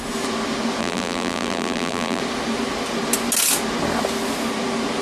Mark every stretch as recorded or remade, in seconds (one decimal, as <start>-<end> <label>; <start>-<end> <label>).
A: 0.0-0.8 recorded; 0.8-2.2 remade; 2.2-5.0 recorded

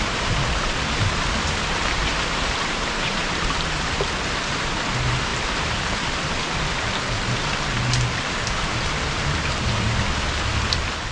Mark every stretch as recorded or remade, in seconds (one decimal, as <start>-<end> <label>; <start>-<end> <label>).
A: 0.0-5.3 recorded; 5.3-7.0 remade; 7.0-11.1 recorded

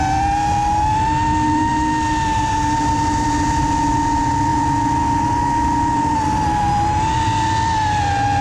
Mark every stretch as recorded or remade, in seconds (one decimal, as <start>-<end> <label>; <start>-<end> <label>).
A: 0.0-8.4 recorded

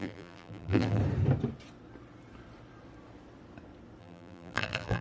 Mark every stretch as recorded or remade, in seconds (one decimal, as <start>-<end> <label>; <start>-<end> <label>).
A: 0.0-1.0 remade; 1.0-4.0 recorded; 4.0-5.0 remade

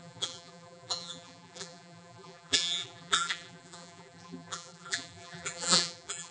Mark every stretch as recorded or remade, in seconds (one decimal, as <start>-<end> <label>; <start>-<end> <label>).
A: 0.0-6.3 remade

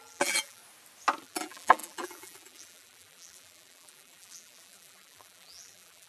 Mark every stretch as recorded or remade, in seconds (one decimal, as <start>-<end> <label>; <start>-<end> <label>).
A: 0.0-0.6 remade; 0.6-1.2 recorded; 1.2-6.1 remade

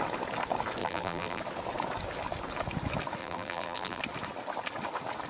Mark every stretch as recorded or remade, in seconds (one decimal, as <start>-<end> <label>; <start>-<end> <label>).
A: 0.0-0.8 recorded; 0.8-1.4 remade; 1.4-3.2 recorded; 3.2-4.0 remade; 4.0-5.3 recorded

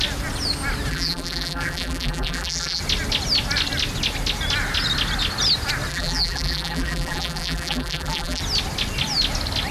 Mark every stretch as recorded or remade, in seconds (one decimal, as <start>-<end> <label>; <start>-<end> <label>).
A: 0.0-0.9 recorded; 0.9-2.8 remade; 2.8-5.9 recorded; 5.9-8.4 remade; 8.4-9.7 recorded